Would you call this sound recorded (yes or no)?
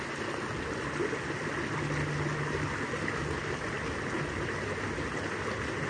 yes